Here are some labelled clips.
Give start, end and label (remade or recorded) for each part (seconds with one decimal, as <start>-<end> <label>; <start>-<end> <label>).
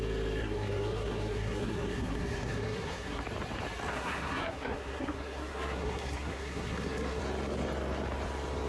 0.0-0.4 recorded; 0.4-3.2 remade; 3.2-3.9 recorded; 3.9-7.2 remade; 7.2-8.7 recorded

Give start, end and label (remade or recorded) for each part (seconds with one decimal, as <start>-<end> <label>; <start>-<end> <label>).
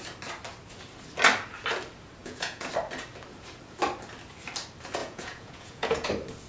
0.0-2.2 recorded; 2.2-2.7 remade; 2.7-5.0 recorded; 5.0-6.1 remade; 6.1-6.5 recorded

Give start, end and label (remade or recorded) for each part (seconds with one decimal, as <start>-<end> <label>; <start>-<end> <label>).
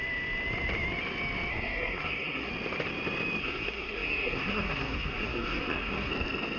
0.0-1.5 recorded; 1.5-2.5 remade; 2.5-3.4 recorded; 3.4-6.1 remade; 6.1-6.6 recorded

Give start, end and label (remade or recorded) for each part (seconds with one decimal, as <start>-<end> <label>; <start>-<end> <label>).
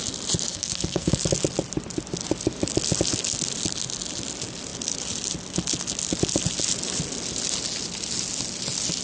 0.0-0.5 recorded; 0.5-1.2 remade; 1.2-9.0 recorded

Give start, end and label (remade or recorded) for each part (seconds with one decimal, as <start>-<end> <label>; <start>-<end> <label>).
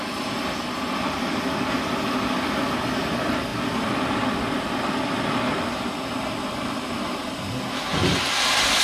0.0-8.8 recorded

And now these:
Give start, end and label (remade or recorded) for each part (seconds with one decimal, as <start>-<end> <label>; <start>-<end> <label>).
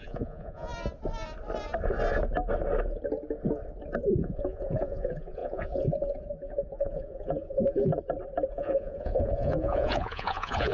0.0-0.7 remade; 0.7-4.1 recorded; 4.1-7.9 remade; 7.9-8.5 recorded; 8.5-10.7 remade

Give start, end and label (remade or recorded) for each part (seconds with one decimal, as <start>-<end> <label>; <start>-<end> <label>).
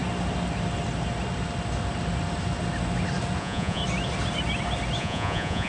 0.0-3.4 recorded; 3.4-3.8 remade; 3.8-5.0 recorded; 5.0-5.7 remade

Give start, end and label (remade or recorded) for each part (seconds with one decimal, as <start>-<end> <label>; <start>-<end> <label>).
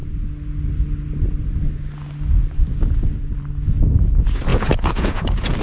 0.0-4.5 recorded; 4.5-5.6 remade